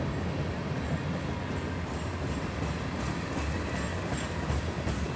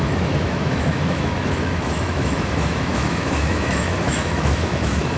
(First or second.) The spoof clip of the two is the second